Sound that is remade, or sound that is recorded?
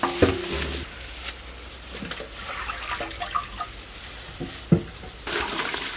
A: recorded